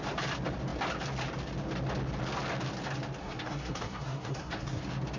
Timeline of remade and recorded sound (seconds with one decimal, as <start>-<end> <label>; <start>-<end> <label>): 0.0-3.2 recorded; 3.2-4.8 remade; 4.8-5.2 recorded